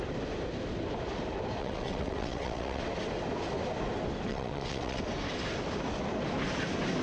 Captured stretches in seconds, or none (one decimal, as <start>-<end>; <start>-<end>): 0.0-1.6; 2.8-4.3; 5.0-7.0